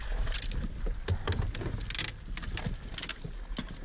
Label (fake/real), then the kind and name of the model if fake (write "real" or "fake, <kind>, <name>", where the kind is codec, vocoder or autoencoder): real